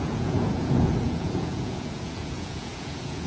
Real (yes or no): no